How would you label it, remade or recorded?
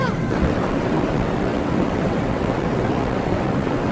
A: remade